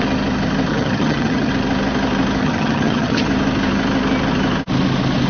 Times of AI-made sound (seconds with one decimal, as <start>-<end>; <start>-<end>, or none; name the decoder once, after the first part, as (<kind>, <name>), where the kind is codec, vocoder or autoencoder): 0.7-1.5 (vocoder, HiFi-GAN); 2.4-3.3